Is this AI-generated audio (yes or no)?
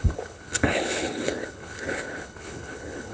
yes